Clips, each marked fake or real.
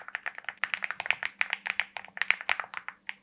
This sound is real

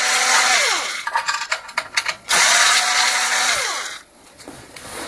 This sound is fake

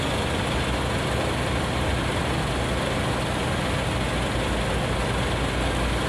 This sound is real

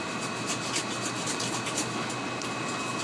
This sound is real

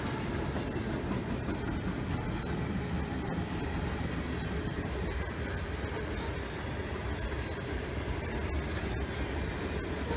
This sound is real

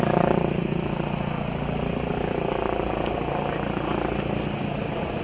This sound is real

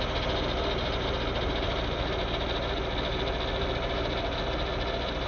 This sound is real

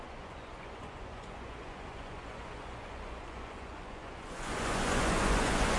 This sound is fake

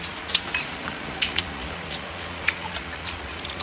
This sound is fake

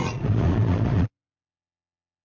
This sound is fake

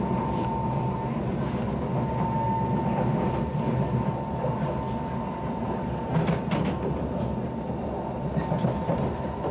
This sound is real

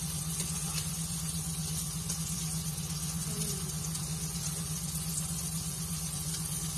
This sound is fake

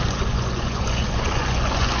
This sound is fake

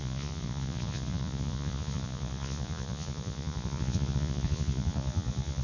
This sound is fake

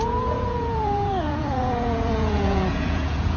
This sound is fake